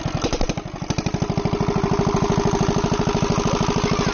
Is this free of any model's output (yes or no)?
yes